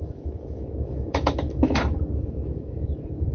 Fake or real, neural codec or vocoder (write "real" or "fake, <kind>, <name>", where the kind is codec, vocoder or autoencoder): fake, autoencoder, DAC-VAE